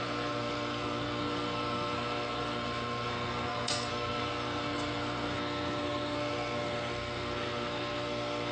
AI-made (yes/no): yes